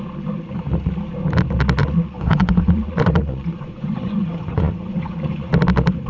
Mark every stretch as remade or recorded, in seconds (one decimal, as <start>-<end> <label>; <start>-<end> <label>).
0.0-1.8 recorded; 1.8-5.5 remade; 5.5-6.1 recorded